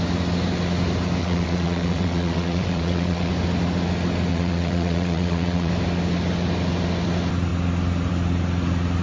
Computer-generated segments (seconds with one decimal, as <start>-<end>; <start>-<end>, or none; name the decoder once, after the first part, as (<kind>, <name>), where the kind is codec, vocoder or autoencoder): 1.2-3.3 (vocoder, WaveNeXt); 4.3-5.7